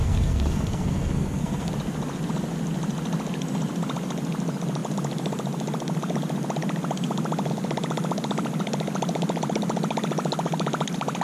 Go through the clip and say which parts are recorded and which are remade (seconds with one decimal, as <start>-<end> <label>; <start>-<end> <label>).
0.0-1.7 remade; 1.7-11.2 recorded